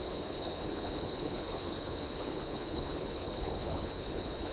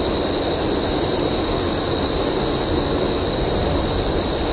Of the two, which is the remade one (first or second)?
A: first